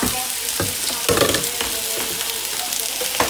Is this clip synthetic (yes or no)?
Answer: no